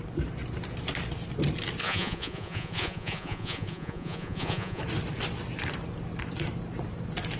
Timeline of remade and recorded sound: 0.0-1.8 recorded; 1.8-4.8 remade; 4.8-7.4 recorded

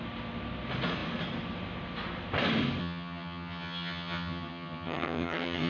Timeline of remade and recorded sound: 0.0-2.8 recorded; 2.8-5.7 remade

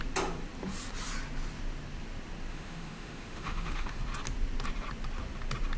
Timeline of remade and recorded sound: 0.0-2.5 recorded; 2.5-4.0 remade; 4.0-5.8 recorded

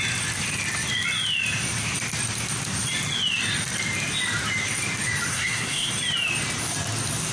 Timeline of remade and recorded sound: 0.0-5.3 recorded; 5.3-5.9 remade; 5.9-7.3 recorded

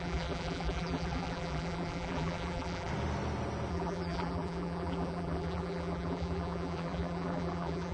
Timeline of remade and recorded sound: 0.0-2.9 remade; 2.9-3.7 recorded; 3.7-7.9 remade

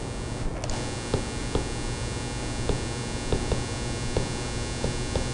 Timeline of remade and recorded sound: 0.0-5.3 recorded

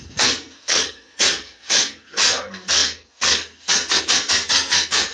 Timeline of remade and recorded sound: 0.0-5.1 remade

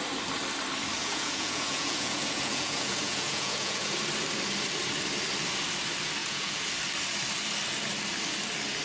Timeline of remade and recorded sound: 0.0-1.0 recorded; 1.0-3.9 remade; 3.9-6.2 recorded; 6.2-6.7 remade; 6.7-8.8 recorded